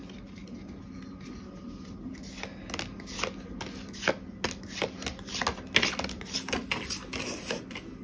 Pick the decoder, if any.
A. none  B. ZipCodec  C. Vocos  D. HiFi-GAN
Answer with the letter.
A